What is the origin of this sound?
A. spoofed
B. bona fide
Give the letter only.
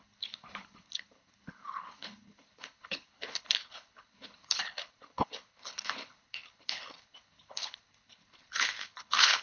A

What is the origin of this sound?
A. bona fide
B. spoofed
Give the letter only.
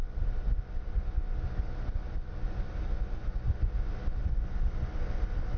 A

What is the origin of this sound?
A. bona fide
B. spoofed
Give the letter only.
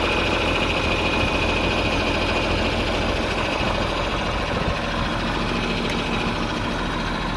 A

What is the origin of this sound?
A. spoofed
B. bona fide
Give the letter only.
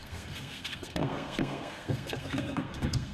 A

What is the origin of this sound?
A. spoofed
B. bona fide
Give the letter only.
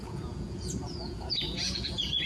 A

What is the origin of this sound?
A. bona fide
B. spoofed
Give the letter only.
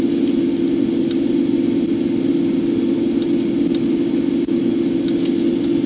A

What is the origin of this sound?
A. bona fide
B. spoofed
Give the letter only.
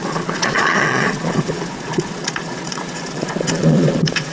B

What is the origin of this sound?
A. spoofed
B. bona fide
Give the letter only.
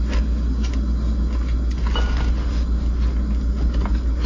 B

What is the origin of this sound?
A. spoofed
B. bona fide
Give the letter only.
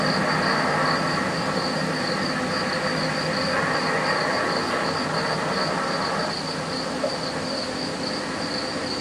B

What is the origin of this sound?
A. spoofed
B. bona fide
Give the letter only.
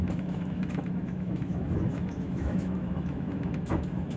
A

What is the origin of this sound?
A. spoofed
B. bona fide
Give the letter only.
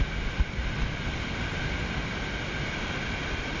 B